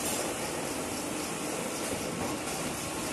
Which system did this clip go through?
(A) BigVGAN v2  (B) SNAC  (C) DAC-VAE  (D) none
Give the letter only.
A